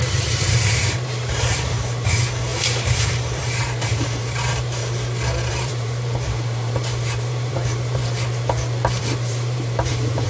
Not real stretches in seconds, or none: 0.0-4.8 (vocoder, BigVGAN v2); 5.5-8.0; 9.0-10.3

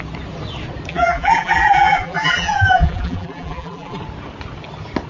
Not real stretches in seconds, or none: 0.9-4.0 (vocoder, BigVGAN v2)

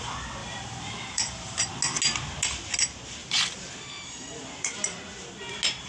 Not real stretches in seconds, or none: 0.4-1.7 (vocoder, BigVGAN v2); 3.2-5.0

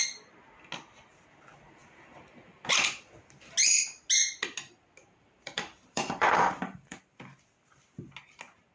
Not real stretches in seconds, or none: 5.0-7.0 (vocoder, BigVGAN v2)